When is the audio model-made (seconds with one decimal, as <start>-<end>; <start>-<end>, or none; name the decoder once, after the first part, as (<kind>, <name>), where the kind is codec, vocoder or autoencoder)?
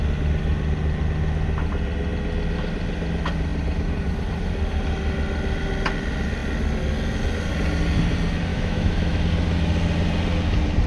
8.5-9.2 (autoencoder, DAC-VAE)